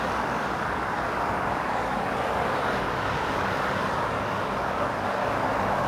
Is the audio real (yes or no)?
no